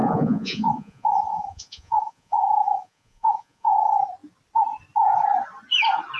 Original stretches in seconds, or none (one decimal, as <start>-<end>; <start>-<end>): 3.7-6.2